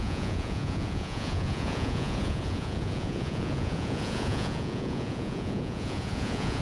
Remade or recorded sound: remade